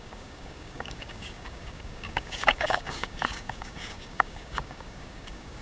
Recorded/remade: remade